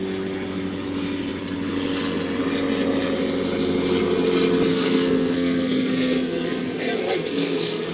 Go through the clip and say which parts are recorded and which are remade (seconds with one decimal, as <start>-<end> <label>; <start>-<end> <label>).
0.0-4.7 recorded; 4.7-7.9 remade